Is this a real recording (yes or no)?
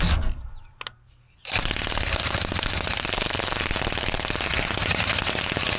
yes